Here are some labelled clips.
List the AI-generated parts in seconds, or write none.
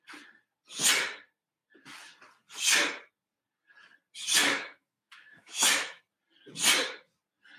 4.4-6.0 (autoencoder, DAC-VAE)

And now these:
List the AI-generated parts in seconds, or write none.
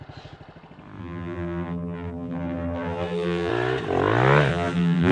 1.0-3.5 (vocoder, BigVGAN v2); 4.5-5.1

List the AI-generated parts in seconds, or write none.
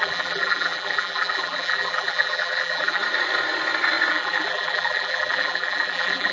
0.0-3.0 (vocoder, BigVGAN v2); 4.1-6.3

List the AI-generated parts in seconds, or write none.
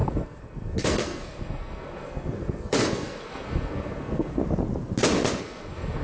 0.0-4.4 (codec, SNAC); 5.4-6.0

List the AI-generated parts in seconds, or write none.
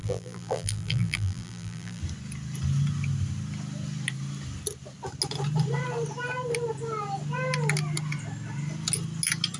0.0-2.0 (vocoder, BigVGAN v2)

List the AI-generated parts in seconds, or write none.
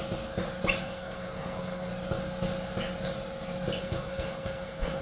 0.8-1.9 (codec, SNAC); 3.8-5.0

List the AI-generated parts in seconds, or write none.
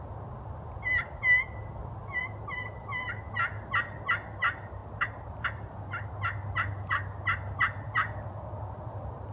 none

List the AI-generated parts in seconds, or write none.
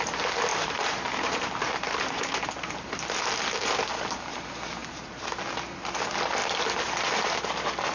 0.5-2.3 (vocoder, BigVGAN v2); 4.8-5.3